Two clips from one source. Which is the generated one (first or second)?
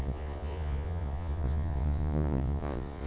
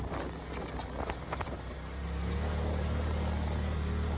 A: first